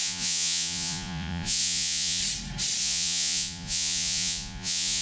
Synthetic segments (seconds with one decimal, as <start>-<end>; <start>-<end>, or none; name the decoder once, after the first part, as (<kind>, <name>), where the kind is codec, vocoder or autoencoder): 0.0-2.2 (vocoder, Vocos); 2.8-5.0